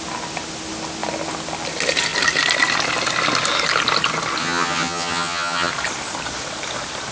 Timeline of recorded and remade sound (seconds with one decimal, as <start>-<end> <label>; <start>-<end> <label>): 0.0-4.4 recorded; 4.4-5.7 remade; 5.7-7.1 recorded